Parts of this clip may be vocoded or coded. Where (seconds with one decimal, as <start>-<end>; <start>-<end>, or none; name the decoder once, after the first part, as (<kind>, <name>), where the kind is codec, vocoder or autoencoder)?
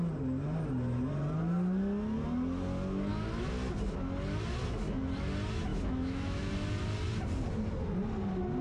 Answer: 5.7-6.5 (autoencoder, DAC-VAE)